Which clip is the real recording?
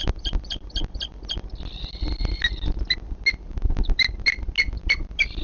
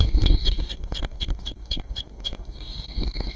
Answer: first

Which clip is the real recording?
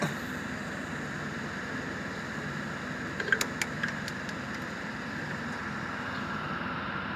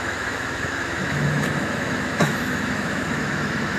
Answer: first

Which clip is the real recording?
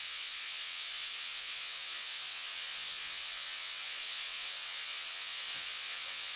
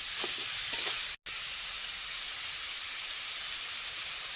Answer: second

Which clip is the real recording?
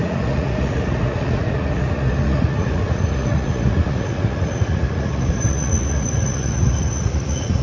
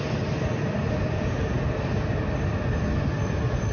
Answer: second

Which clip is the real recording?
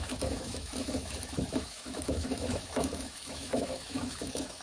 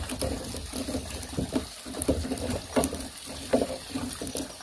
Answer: second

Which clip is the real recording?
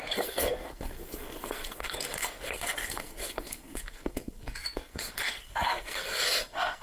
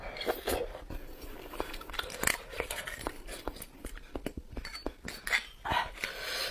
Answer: second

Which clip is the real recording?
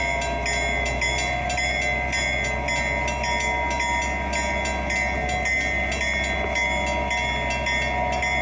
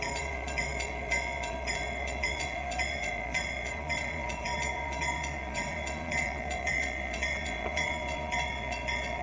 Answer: first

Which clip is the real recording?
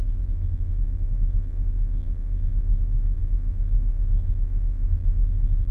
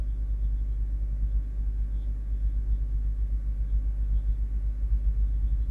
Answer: second